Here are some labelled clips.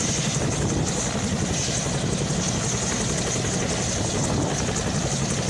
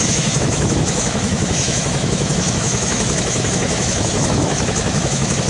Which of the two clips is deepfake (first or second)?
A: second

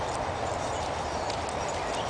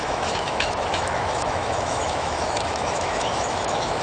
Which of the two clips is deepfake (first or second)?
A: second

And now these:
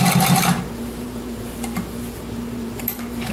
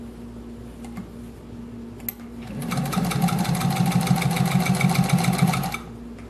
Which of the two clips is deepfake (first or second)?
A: first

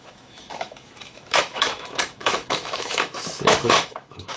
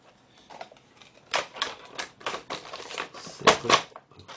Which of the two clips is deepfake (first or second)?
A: first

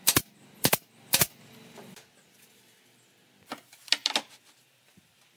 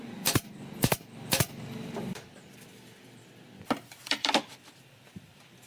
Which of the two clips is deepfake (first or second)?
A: second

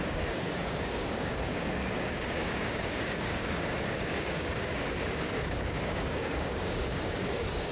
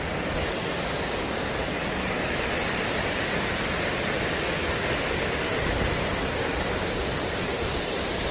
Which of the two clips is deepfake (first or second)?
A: first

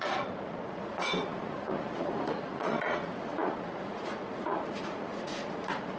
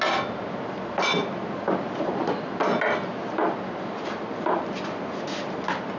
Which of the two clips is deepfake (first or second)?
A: first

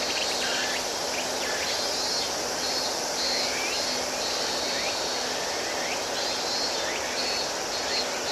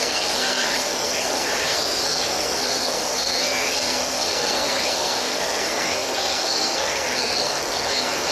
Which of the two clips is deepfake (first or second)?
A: second